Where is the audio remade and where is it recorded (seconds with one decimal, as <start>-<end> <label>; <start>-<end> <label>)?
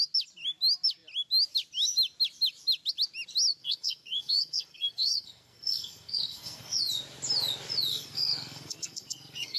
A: 0.0-3.6 recorded; 3.6-6.8 remade; 6.8-7.9 recorded; 7.9-9.6 remade